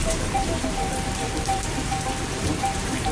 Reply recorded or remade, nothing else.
remade